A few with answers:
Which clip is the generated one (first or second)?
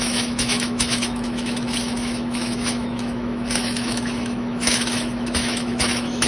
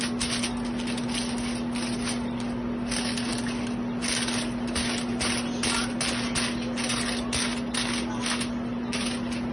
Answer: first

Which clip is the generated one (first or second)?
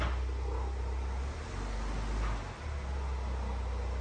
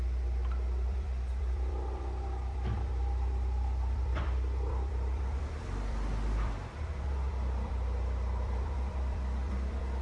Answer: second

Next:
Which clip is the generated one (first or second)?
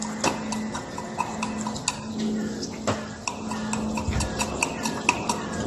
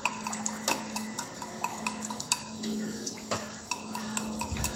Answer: second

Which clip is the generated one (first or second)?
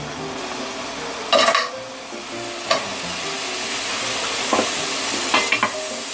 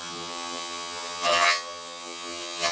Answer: second